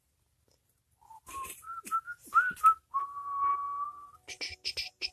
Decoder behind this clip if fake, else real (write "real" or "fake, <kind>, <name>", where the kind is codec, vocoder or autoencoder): real